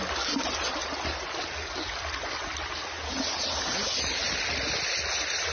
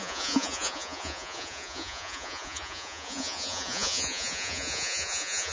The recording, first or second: first